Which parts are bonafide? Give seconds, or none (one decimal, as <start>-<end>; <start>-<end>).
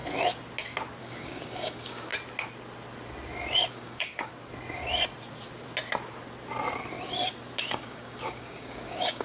0.0-1.0; 2.1-3.7; 4.3-7.6